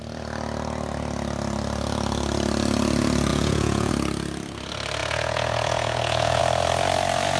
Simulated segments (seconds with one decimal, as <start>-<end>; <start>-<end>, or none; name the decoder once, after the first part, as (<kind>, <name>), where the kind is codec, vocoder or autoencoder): 3.3-3.9 (vocoder, Vocos); 5.0-6.4